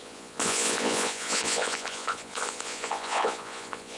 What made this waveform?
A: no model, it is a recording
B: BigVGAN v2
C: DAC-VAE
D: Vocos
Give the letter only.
D